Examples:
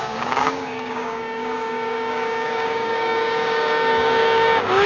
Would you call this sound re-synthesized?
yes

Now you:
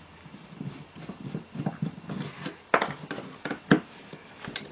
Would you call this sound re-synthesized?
no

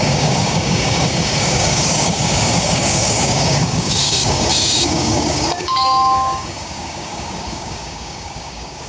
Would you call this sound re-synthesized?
yes